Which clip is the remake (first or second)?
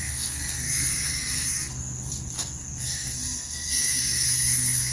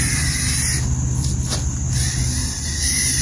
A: first